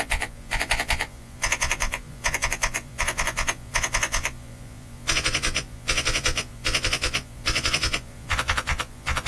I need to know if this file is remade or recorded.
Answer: remade